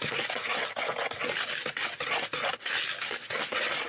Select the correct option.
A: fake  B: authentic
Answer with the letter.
B